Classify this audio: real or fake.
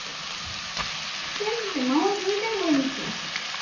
real